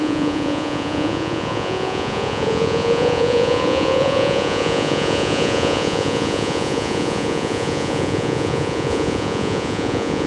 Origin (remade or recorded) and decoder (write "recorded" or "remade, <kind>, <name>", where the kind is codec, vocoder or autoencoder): remade, vocoder, Vocos